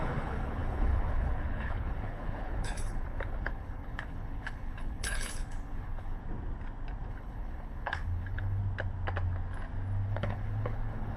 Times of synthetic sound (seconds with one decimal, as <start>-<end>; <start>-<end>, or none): 0.0-6.2; 7.1-8.6; 10.1-11.2